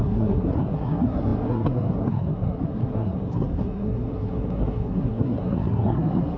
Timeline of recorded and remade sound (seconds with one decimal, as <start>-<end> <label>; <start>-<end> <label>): 0.0-6.4 remade